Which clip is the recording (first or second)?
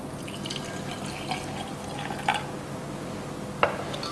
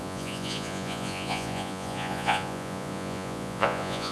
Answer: first